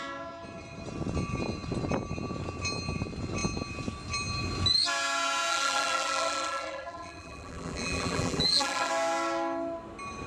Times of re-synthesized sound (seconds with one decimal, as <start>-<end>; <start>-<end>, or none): 5.5-8.9